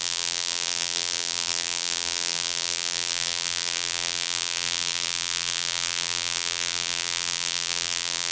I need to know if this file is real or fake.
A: fake